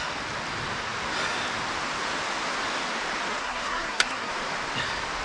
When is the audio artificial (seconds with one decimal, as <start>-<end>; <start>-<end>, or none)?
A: 3.3-4.3